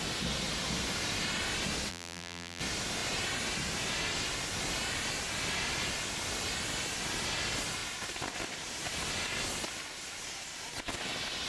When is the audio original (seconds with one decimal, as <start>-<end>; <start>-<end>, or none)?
0.0-1.9; 2.6-11.5

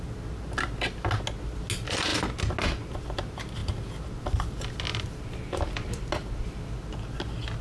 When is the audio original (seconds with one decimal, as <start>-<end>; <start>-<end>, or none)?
0.0-7.6

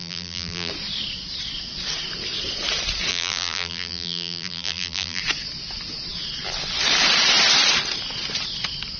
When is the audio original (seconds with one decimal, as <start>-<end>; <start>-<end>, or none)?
0.7-3.1; 5.2-9.0

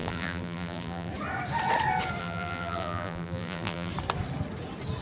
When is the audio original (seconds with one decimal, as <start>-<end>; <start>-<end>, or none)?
1.1-2.2; 3.9-5.0

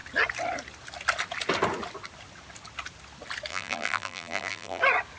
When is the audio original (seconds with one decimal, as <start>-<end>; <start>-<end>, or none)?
0.0-3.5; 4.8-5.2

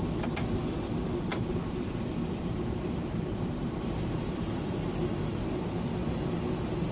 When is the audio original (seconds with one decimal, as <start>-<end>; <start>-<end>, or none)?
0.0-1.3; 5.4-6.9

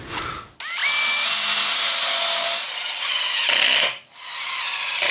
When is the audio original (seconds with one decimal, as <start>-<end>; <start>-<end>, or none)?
0.0-5.1

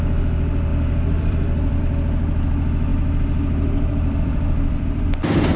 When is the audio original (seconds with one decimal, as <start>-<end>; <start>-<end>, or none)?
0.0-0.7; 1.8-2.9